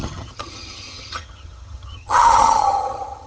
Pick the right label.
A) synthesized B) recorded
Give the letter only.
A